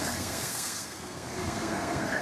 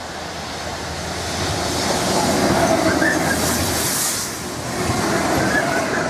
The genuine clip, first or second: second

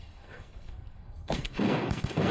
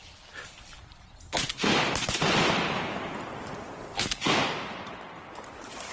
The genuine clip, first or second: second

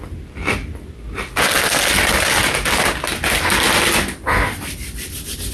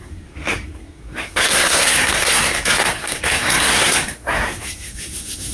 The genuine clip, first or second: first